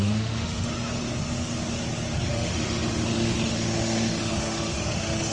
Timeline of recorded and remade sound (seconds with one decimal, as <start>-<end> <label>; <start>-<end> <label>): 0.0-0.7 remade; 0.7-2.3 recorded; 2.3-5.3 remade